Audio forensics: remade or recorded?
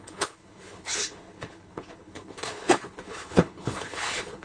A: remade